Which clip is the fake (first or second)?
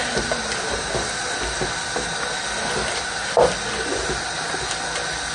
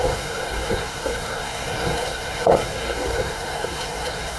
second